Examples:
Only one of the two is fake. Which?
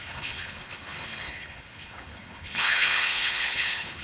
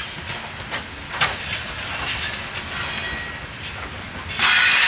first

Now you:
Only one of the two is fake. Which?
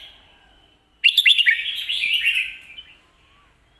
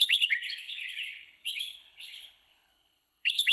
second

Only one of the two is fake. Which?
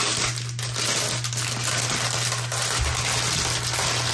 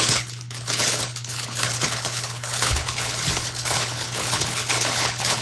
second